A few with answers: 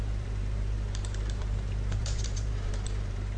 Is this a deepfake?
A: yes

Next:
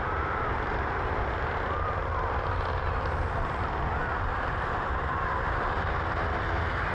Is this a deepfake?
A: yes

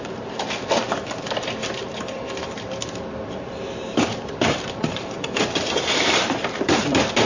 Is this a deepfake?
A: yes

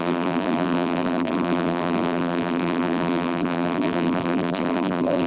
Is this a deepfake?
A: yes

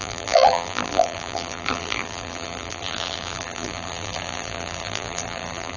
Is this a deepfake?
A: yes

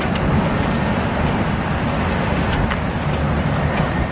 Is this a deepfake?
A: no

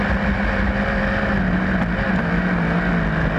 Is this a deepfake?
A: no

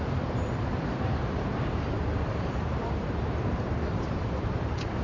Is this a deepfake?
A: yes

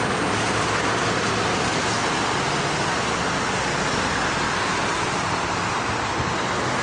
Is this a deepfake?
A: no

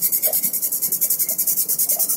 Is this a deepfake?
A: no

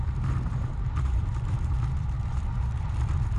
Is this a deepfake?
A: yes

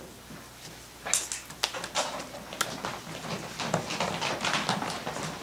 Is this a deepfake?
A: no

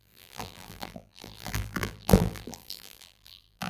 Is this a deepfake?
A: yes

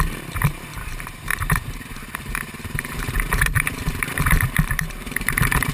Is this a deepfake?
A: yes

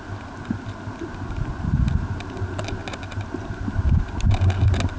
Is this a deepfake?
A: no